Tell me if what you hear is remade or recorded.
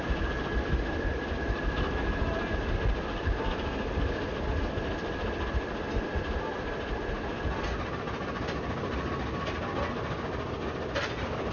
recorded